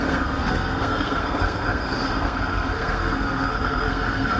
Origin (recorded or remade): remade